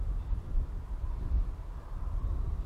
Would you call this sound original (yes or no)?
yes